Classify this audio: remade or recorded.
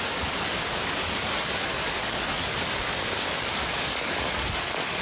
remade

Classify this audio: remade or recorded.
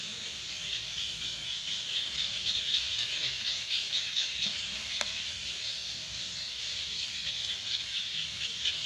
remade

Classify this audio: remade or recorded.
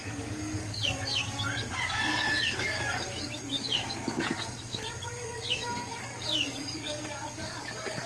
remade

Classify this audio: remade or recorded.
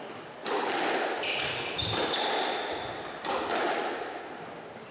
recorded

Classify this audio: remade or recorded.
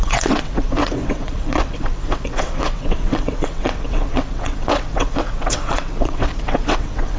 remade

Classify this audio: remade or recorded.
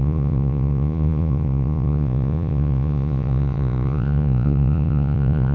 remade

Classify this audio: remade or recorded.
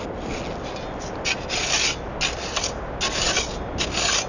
recorded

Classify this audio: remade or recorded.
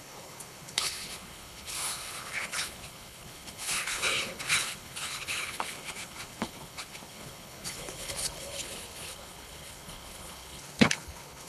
remade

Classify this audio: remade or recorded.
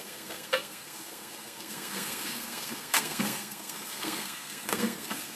remade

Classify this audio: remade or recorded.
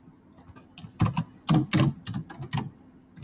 recorded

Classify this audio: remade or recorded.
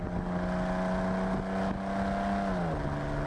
recorded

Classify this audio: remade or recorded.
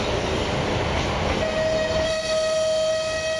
recorded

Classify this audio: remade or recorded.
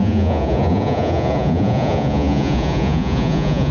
remade